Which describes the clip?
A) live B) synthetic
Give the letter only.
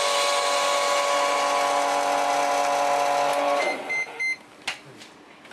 A